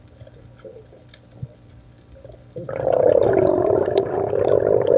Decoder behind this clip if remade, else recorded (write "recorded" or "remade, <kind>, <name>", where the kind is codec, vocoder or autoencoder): remade, vocoder, BigVGAN v2